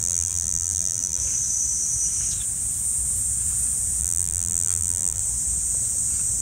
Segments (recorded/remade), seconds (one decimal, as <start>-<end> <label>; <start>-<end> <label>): 0.0-1.2 remade; 1.2-4.0 recorded; 4.0-5.2 remade; 5.2-6.4 recorded